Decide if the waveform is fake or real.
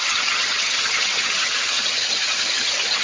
fake